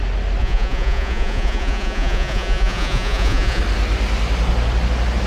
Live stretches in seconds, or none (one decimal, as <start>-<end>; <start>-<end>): 0.0-0.4; 3.6-5.3

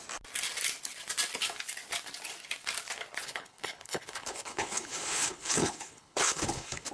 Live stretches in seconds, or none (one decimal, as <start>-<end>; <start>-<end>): 0.0-3.2

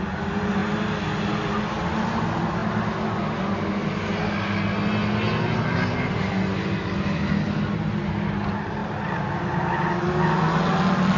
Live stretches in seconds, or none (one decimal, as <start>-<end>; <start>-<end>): 0.0-11.2

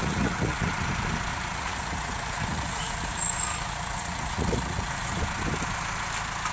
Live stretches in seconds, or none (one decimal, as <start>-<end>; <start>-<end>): 0.7-1.3; 5.2-6.5

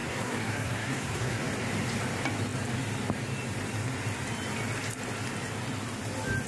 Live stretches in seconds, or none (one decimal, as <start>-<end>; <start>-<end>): 1.4-6.5

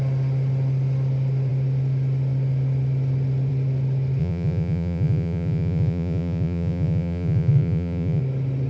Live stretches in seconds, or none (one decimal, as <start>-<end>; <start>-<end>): 0.0-4.2; 8.2-8.7

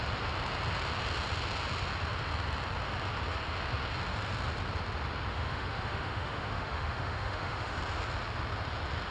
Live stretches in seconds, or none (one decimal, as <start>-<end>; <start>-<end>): 0.0-5.3; 7.8-9.1

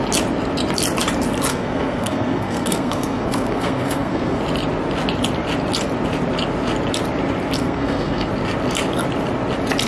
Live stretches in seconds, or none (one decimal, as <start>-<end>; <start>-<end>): 0.0-1.5; 4.4-7.6; 8.3-9.9